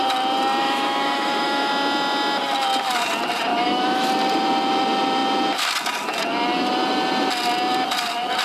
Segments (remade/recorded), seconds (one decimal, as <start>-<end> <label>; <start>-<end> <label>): 0.0-0.6 recorded; 0.6-1.7 remade; 1.7-3.5 recorded; 3.5-4.1 remade; 4.1-8.4 recorded